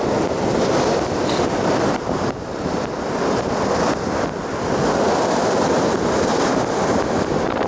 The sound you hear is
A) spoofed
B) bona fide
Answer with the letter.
B